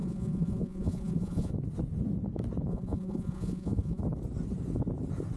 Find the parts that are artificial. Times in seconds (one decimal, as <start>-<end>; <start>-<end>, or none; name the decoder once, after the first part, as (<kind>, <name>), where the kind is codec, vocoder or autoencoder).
0.0-1.5 (vocoder, Vocos); 2.7-4.0